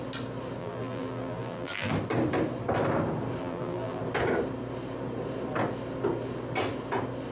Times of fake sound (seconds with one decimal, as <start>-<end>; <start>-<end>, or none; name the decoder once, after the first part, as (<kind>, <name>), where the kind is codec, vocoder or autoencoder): 0.6-1.9 (vocoder, BigVGAN v2); 3.4-4.0